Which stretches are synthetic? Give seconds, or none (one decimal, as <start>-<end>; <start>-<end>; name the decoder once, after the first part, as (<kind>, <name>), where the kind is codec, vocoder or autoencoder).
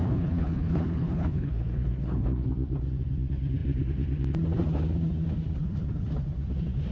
0.0-2.5 (codec, HILCodec)